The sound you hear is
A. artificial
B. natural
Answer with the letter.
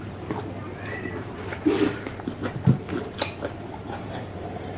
A